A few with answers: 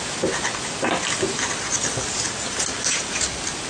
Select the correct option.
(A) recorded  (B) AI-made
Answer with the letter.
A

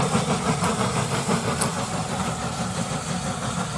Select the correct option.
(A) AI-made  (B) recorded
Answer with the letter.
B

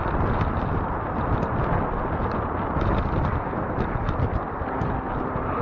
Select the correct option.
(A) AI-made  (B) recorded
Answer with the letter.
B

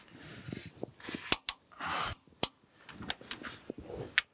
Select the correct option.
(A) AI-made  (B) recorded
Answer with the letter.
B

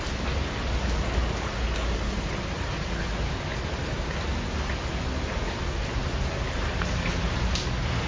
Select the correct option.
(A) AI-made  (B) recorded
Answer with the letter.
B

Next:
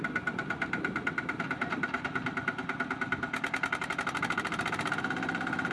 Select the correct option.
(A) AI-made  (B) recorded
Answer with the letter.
A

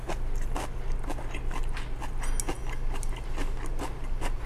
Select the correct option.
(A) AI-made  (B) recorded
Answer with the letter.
B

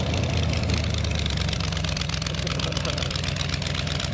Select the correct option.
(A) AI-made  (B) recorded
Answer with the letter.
A